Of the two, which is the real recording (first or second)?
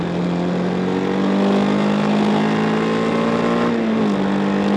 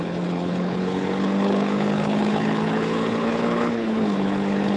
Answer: first